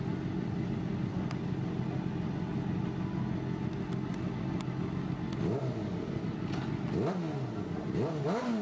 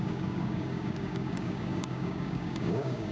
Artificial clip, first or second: second